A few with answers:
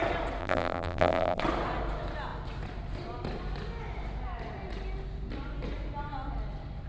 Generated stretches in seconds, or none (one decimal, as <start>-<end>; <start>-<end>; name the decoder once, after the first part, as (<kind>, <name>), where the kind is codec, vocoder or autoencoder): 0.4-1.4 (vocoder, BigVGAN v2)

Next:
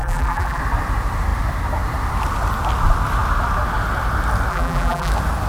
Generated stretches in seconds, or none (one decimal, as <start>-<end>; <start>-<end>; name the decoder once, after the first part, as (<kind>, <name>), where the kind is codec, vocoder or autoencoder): 0.0-0.6 (vocoder, BigVGAN v2); 4.5-5.1

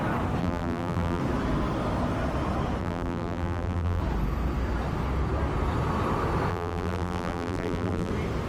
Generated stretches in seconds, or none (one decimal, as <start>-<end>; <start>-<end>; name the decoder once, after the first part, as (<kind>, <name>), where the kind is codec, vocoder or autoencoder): 0.4-1.2 (vocoder, BigVGAN v2); 2.8-4.0; 6.5-8.1

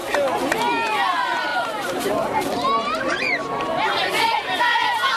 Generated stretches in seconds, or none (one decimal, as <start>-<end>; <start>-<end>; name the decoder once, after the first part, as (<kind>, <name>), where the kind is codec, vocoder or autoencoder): 1.5-4.6 (vocoder, BigVGAN v2)

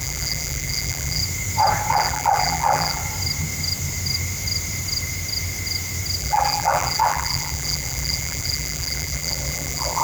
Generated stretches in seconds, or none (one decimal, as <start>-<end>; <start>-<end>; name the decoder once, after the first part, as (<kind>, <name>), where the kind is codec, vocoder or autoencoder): 0.0-1.2 (vocoder, BigVGAN v2); 1.9-3.0; 6.2-10.0